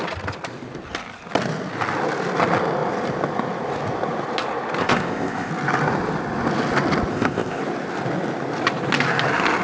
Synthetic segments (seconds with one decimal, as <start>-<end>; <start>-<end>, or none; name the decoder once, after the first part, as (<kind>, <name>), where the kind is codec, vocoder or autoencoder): 4.8-5.5 (codec, ZipCodec); 7.1-7.6